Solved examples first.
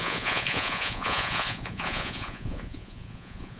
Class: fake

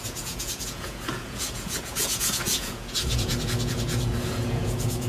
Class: fake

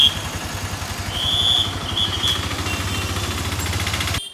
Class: real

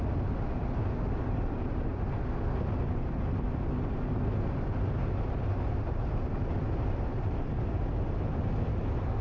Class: real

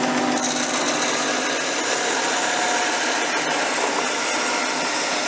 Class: real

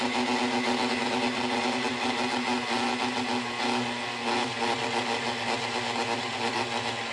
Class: real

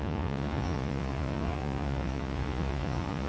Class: fake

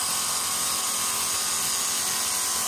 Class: real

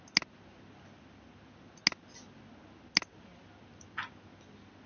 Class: real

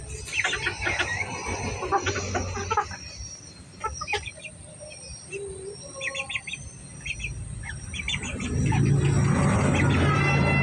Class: real